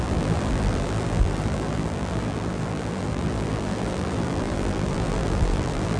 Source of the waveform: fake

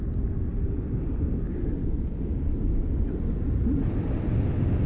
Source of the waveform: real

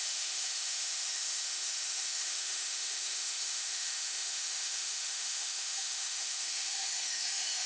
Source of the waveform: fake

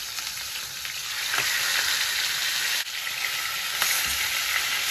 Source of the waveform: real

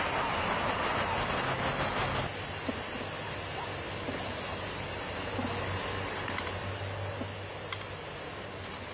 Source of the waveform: real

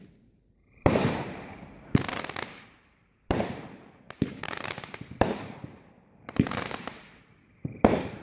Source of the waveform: fake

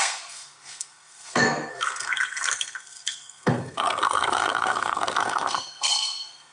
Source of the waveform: fake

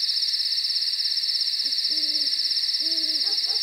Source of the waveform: real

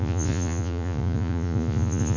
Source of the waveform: fake